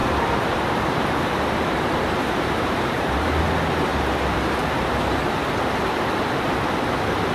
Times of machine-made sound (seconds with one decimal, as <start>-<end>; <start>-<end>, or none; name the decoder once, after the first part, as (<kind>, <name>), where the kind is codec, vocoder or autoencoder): 0.0-3.4 (vocoder, BigVGAN v2); 3.9-5.9